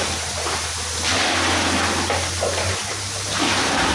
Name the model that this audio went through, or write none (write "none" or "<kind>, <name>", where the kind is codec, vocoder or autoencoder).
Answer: none